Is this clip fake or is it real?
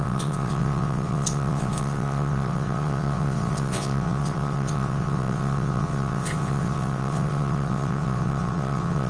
fake